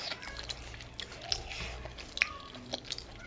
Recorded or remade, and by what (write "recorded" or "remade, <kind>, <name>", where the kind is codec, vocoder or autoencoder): recorded